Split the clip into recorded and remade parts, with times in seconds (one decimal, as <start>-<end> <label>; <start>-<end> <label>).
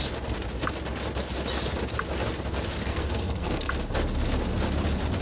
0.0-2.9 recorded; 2.9-3.7 remade; 3.7-5.2 recorded